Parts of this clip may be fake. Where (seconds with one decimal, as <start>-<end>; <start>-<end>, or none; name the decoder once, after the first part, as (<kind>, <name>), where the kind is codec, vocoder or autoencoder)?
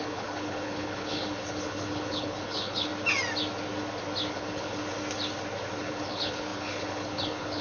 0.0-2.9 (codec, HILCodec); 4.3-4.8; 5.8-7.6